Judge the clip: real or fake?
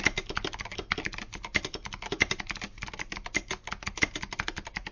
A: real